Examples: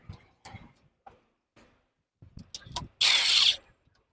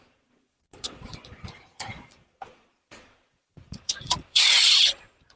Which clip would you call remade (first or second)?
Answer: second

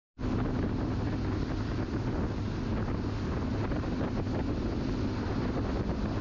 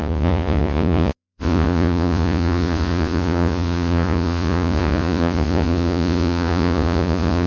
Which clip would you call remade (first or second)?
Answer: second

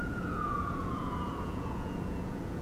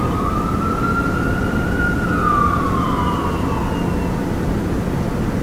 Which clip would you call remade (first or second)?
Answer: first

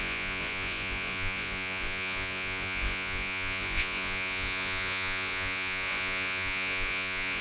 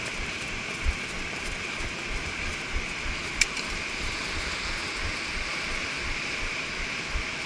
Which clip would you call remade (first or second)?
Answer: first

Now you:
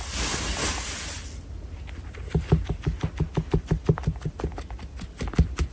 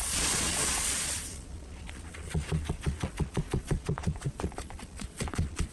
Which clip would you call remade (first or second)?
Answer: second